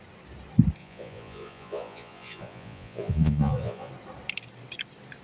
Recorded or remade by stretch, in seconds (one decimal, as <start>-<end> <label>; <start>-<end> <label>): 0.0-0.8 recorded; 0.8-3.9 remade; 3.9-5.2 recorded